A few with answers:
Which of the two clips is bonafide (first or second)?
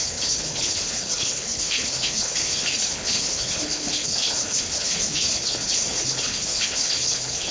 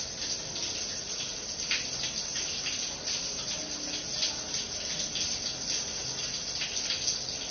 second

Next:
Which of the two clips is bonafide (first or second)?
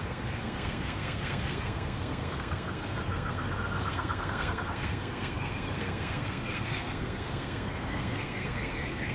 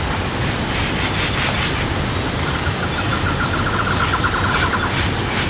second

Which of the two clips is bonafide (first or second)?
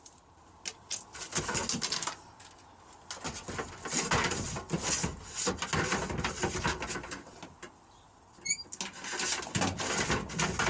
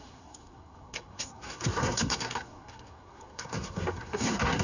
first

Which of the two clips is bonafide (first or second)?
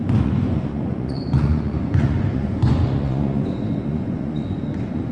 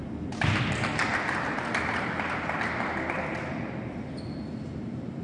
second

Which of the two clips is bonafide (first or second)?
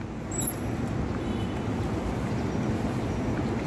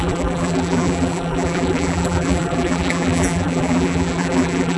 first